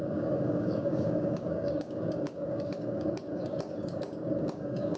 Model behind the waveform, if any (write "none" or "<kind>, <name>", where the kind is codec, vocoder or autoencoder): codec, DAC